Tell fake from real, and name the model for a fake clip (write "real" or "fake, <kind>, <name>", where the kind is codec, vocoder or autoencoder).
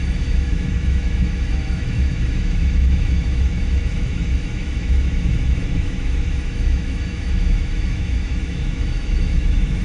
fake, autoencoder, DAC-VAE